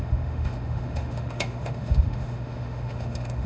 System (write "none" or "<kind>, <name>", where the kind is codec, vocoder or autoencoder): autoencoder, DAC-VAE